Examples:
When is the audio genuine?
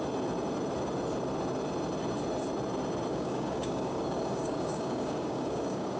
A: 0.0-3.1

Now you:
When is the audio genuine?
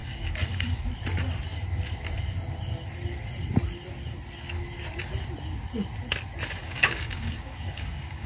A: 0.8-6.6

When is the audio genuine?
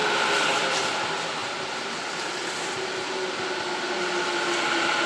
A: 0.0-5.1